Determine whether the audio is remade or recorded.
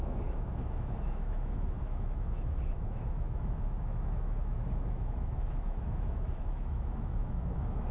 remade